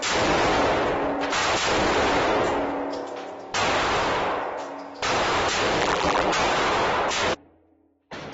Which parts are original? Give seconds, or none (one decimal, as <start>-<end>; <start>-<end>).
0.0-5.8; 6.3-8.3